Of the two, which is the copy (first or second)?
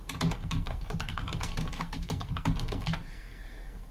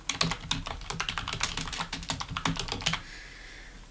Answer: first